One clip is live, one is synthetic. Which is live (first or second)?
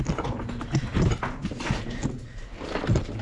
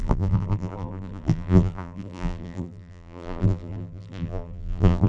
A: first